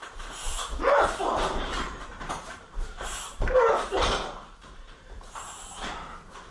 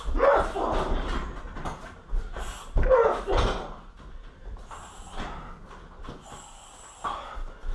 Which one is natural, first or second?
second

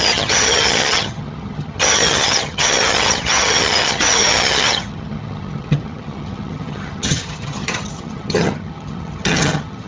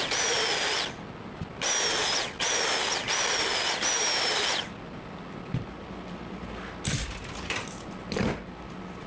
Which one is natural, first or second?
second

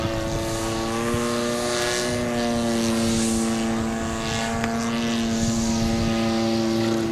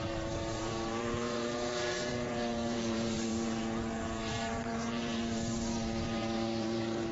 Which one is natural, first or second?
first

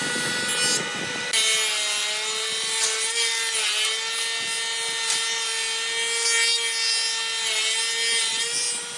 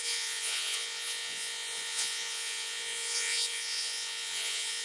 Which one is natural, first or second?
first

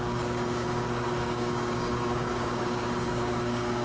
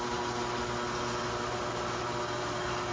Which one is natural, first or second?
second